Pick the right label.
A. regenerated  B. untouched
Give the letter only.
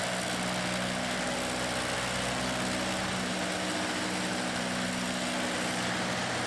B